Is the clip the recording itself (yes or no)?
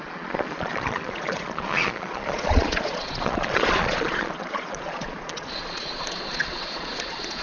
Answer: no